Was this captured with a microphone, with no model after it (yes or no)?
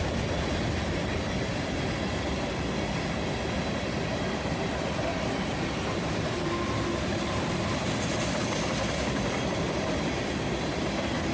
yes